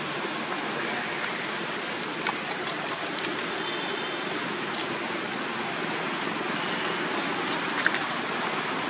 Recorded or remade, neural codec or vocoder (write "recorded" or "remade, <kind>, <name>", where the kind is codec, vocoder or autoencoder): recorded